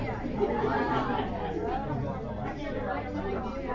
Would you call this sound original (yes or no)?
yes